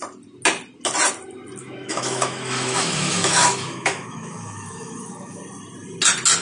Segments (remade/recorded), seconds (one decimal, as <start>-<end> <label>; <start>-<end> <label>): 0.0-1.6 recorded; 1.6-5.4 remade; 5.4-6.4 recorded